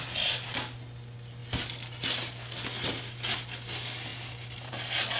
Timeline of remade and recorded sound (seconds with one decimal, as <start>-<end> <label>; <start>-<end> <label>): 0.0-5.2 recorded